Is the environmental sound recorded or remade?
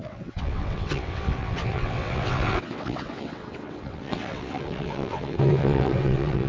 remade